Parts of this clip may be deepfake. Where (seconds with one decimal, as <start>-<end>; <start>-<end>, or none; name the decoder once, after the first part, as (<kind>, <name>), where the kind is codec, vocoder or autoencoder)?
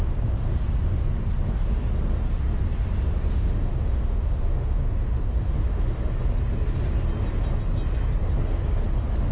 3.3-6.1 (autoencoder, DAC-VAE)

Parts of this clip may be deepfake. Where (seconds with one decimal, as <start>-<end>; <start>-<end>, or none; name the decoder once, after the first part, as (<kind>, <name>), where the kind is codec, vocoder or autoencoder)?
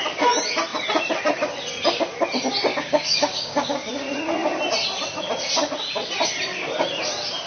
2.7-3.9 (codec, DAC)